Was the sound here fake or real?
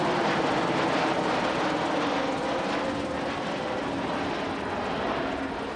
real